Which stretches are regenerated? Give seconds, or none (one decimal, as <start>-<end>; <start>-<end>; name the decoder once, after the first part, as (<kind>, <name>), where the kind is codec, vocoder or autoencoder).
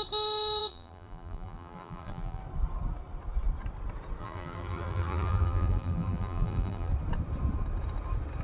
0.6-2.4 (vocoder, BigVGAN v2); 4.2-6.9